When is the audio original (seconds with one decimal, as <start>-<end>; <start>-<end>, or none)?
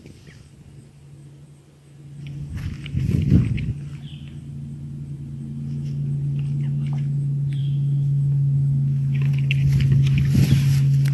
0.0-7.6; 9.3-11.1